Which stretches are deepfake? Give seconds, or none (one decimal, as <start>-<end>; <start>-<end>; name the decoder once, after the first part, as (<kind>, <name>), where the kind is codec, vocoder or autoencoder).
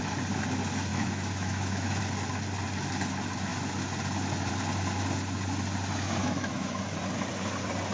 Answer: 0.9-2.0 (autoencoder, DAC-VAE); 6.2-6.8